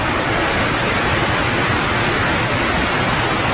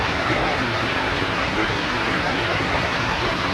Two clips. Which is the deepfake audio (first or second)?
second